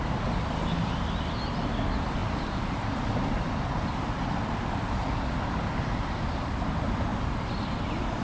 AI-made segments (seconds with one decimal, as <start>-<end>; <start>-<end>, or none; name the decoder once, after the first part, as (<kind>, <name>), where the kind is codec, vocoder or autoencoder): none